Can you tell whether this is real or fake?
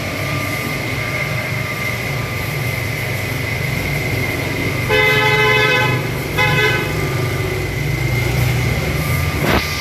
fake